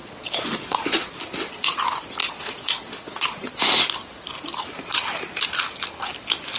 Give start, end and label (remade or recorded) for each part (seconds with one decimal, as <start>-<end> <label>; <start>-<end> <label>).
0.0-1.2 remade; 1.2-2.2 recorded; 2.2-3.5 remade; 3.5-6.6 recorded